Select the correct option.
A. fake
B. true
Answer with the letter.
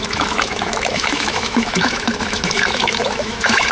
A